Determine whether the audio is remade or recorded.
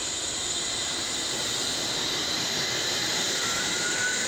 remade